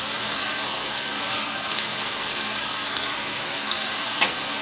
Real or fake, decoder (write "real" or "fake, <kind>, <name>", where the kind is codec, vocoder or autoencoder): fake, codec, SNAC